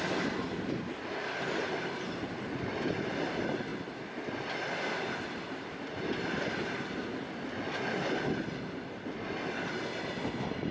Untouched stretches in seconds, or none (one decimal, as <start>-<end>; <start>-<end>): 0.0-10.7